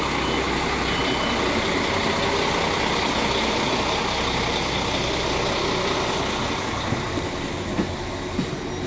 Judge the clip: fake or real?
real